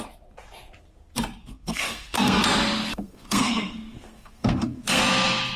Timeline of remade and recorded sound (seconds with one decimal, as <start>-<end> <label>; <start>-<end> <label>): 0.0-1.4 recorded; 1.4-2.4 remade; 2.4-2.9 recorded; 2.9-5.0 remade; 5.0-5.6 recorded